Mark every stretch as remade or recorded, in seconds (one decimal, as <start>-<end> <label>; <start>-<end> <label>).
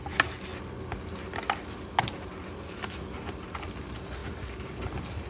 0.0-5.3 recorded